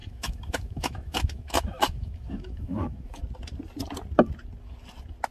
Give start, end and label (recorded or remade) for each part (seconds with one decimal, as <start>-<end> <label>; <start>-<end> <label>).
0.0-3.2 remade; 3.2-5.3 recorded